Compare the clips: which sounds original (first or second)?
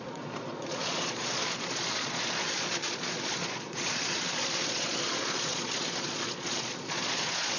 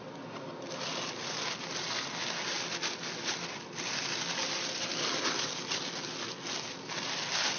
second